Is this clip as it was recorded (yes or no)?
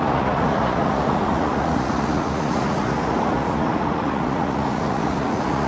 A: no